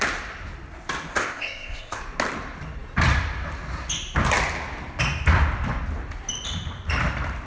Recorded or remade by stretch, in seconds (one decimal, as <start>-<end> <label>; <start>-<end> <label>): 0.0-1.1 recorded; 1.1-2.0 remade; 2.0-7.5 recorded